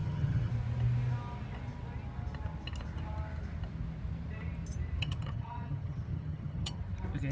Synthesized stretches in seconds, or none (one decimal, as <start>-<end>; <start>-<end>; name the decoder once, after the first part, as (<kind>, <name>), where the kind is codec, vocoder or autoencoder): 0.0-0.5 (vocoder, HiFi-GAN); 5.0-6.8